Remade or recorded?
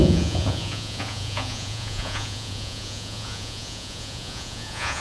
remade